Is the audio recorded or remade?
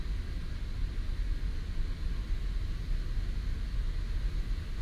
recorded